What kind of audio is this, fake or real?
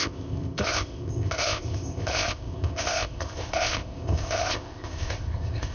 fake